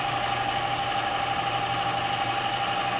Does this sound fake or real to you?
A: real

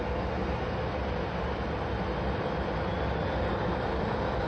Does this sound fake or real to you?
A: real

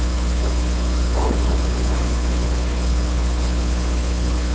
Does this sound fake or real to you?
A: fake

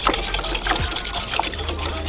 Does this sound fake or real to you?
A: real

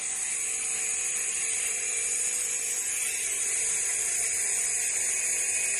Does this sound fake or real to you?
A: real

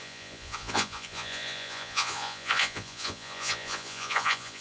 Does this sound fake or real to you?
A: fake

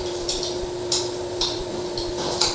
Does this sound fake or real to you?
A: fake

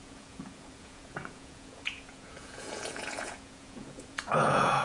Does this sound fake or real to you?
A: fake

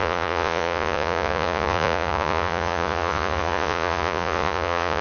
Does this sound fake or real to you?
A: fake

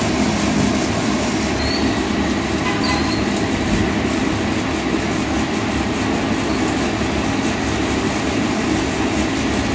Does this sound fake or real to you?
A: real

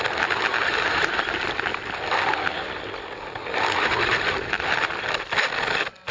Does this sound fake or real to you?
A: real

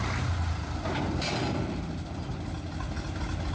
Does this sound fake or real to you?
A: real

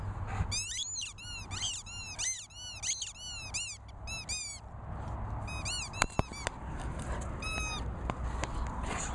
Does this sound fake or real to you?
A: real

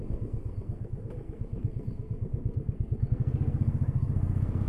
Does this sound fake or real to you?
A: fake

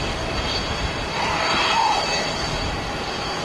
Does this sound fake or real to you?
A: fake